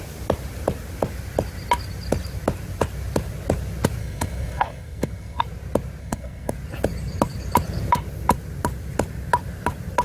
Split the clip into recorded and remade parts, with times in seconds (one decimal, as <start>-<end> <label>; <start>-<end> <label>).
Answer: 0.0-4.0 recorded; 4.0-5.4 remade; 5.4-6.0 recorded; 6.0-6.5 remade; 6.5-10.0 recorded